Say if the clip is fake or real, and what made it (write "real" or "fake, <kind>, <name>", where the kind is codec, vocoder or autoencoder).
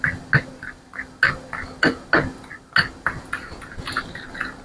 real